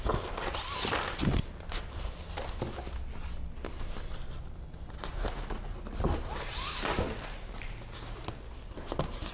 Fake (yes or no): no